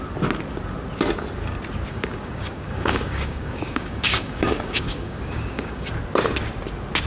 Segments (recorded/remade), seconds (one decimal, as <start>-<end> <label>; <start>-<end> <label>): 0.0-1.9 recorded; 1.9-5.9 remade; 5.9-7.1 recorded